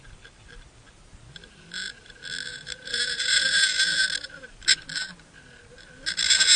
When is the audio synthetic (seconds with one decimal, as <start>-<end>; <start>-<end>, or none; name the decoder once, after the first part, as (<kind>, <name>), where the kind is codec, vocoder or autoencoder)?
2.5-3.6 (vocoder, BigVGAN v2)